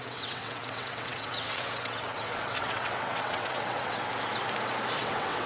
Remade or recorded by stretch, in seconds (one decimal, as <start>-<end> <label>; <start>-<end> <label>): 0.0-4.1 remade; 4.1-5.0 recorded; 5.0-5.5 remade